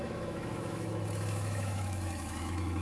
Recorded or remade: remade